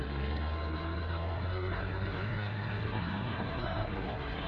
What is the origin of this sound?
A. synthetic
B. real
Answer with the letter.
A